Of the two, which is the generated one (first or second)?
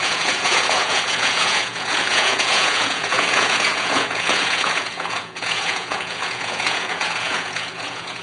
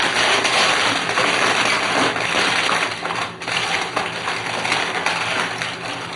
first